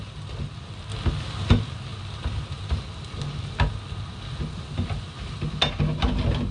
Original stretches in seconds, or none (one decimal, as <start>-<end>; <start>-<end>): 0.0-6.5